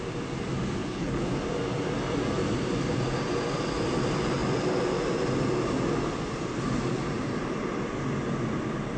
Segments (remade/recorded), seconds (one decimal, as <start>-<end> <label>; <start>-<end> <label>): 0.0-0.8 recorded; 0.8-1.4 remade; 1.4-9.0 recorded